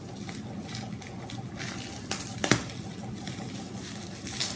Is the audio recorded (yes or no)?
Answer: yes